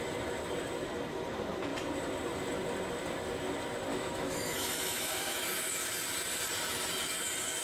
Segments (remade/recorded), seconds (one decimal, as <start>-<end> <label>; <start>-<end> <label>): 0.0-3.9 recorded; 3.9-5.8 remade; 5.8-7.6 recorded